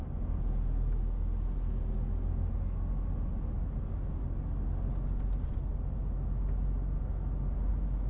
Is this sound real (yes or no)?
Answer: yes